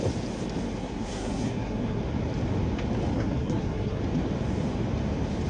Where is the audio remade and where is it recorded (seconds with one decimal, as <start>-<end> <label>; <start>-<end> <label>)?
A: 0.0-0.8 recorded; 0.8-2.0 remade; 2.0-3.1 recorded; 3.1-4.0 remade; 4.0-5.5 recorded